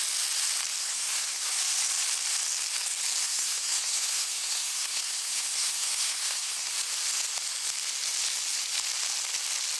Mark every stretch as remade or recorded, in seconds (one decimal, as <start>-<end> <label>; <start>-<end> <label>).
0.0-0.8 recorded; 0.8-1.6 remade; 1.6-3.2 recorded; 3.2-6.7 remade; 6.7-9.8 recorded